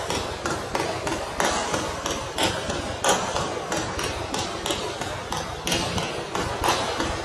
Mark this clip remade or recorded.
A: recorded